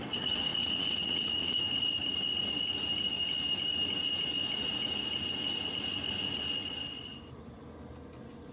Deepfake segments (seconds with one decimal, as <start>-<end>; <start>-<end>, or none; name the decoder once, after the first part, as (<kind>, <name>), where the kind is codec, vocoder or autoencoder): 0.5-1.6 (vocoder, Vocos)